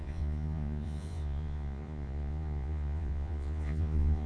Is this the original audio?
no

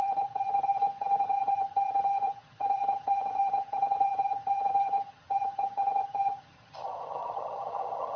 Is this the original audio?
no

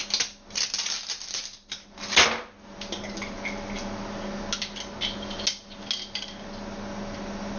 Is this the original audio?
yes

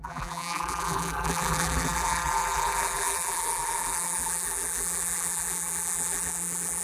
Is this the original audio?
no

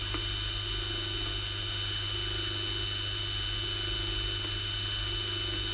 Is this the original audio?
yes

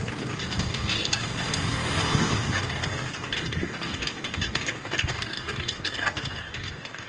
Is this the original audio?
no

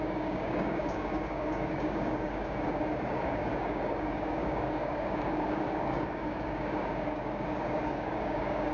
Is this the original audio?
no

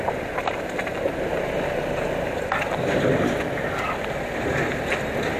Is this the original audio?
yes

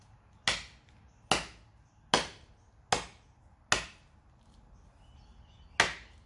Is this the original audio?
yes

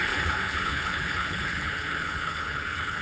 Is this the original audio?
no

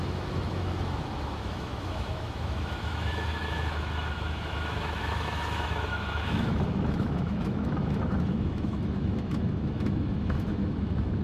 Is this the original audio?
no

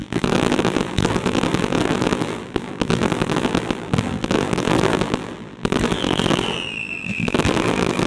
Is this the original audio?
no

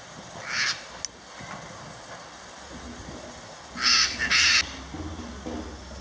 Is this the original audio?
yes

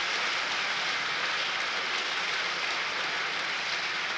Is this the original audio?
yes